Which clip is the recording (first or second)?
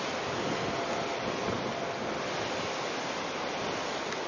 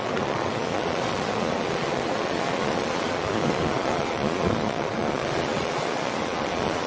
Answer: first